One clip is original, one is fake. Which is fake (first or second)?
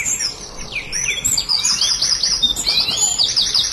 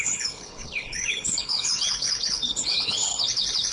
second